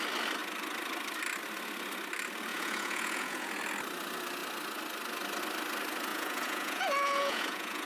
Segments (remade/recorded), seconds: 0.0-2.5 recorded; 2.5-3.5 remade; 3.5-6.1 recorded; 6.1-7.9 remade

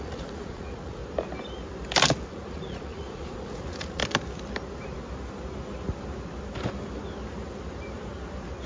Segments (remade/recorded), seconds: 0.0-1.0 remade; 1.0-2.3 recorded; 2.3-4.0 remade; 4.0-8.7 recorded

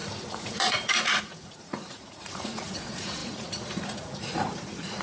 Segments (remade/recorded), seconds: 0.0-5.0 remade